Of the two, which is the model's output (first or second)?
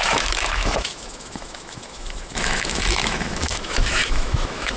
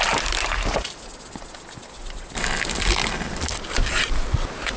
first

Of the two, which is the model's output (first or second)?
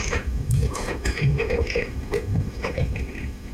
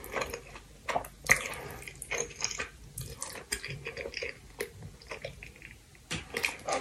first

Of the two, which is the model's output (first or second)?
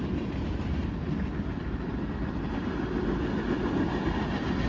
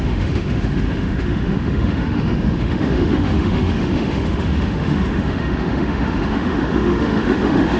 second